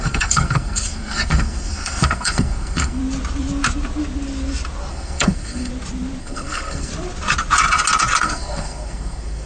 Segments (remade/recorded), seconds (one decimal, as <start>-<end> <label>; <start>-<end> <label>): 0.0-3.0 remade; 3.0-4.9 recorded; 4.9-5.7 remade; 5.7-6.2 recorded; 6.2-6.9 remade; 6.9-8.2 recorded; 8.2-9.5 remade